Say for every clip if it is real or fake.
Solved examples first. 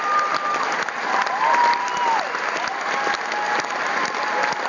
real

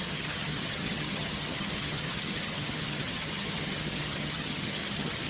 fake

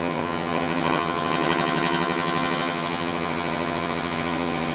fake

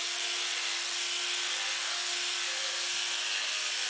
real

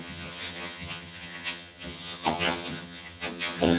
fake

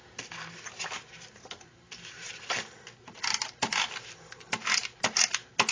real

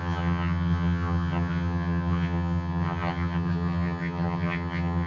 fake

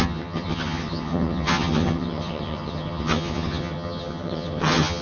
fake